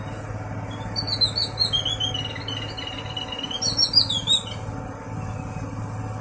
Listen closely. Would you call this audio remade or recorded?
recorded